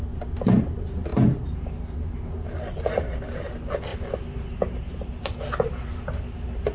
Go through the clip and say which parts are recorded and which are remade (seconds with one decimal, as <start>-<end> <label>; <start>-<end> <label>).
0.0-6.7 recorded